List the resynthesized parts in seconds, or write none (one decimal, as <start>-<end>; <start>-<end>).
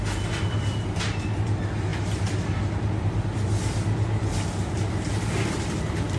none